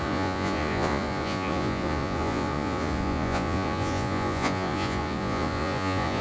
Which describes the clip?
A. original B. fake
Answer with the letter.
B